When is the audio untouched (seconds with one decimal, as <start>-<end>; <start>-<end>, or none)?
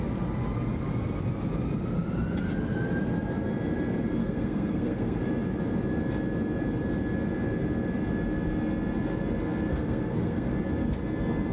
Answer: 0.0-4.2; 5.2-9.7; 10.5-11.5